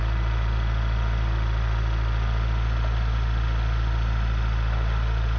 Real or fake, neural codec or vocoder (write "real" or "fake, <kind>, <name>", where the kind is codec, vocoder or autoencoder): real